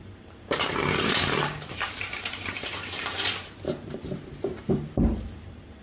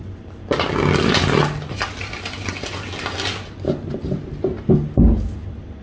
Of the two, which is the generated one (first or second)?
first